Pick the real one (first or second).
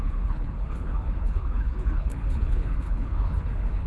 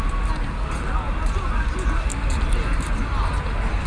second